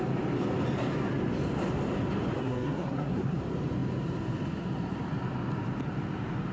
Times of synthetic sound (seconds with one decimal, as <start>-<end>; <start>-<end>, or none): 2.4-3.4